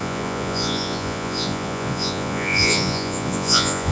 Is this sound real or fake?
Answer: fake